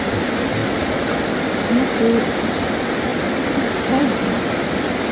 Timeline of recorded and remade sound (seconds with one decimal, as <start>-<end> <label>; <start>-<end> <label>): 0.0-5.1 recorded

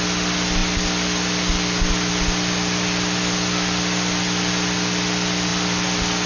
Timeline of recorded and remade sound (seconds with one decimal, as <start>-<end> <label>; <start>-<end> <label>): 0.0-6.3 recorded

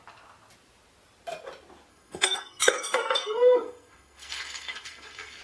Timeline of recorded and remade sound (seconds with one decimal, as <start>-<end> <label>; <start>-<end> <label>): 0.0-1.9 recorded; 1.9-5.4 remade

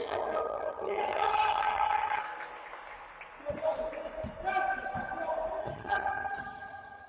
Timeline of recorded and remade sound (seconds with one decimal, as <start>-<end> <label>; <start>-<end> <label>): 0.0-2.2 remade; 2.2-5.6 recorded; 5.6-7.1 remade